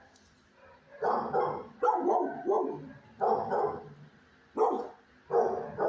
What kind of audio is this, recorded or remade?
recorded